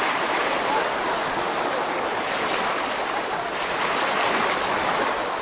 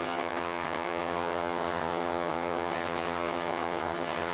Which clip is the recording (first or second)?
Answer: first